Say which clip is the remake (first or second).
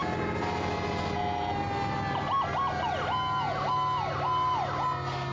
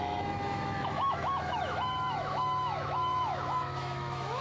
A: second